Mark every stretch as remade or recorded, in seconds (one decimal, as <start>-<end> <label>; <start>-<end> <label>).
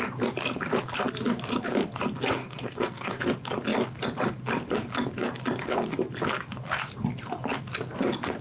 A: 0.0-2.4 recorded; 2.4-3.2 remade; 3.2-8.4 recorded